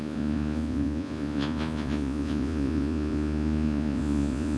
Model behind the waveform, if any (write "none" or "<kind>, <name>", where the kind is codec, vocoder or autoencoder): vocoder, Vocos